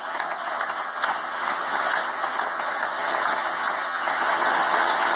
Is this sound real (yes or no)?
no